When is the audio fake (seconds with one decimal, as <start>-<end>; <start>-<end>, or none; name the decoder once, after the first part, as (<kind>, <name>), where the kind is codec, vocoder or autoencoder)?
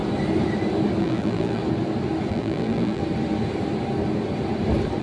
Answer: 1.0-1.6 (vocoder, BigVGAN v2); 2.3-3.0